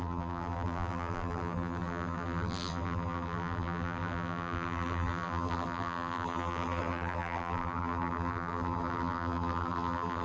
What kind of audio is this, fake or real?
fake